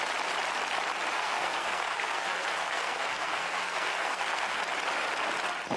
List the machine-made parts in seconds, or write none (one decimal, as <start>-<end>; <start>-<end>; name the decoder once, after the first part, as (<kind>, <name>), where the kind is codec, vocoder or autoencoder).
1.1-4.6 (codec, SNAC)